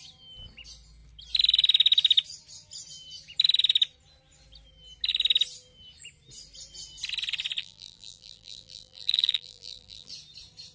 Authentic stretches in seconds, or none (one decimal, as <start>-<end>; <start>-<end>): 0.0-7.6; 10.1-10.7